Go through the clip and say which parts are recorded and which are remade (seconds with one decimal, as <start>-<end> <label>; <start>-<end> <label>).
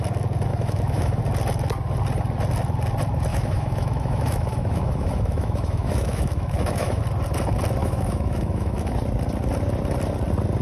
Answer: 0.0-0.5 recorded; 0.5-1.2 remade; 1.2-3.3 recorded; 3.3-7.0 remade; 7.0-7.8 recorded; 7.8-8.9 remade; 8.9-10.6 recorded